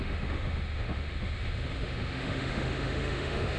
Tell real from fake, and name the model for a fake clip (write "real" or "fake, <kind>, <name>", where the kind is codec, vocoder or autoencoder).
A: fake, autoencoder, DAC-VAE